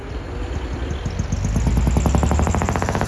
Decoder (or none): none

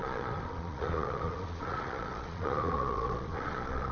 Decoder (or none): vocoder, Vocos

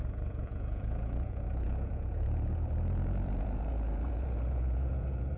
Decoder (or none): vocoder, Vocos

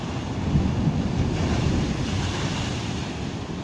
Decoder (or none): none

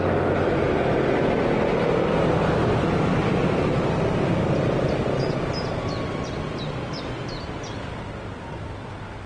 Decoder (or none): none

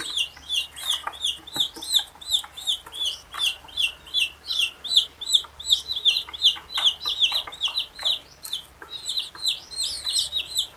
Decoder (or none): none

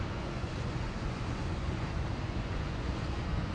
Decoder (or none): vocoder, Vocos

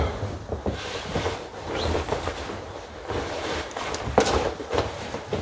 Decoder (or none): none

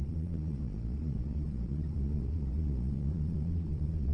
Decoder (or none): vocoder, Vocos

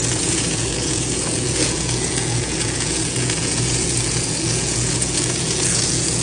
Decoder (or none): vocoder, Vocos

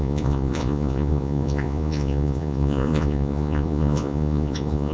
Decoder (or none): vocoder, Vocos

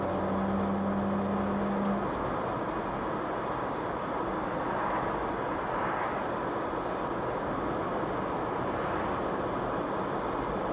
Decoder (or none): none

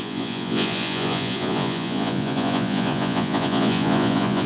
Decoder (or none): vocoder, Vocos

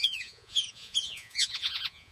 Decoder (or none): vocoder, Vocos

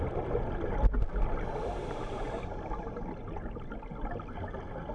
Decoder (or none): none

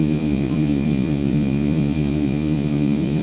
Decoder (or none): vocoder, Vocos